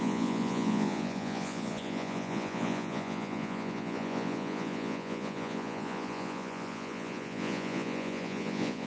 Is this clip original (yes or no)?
no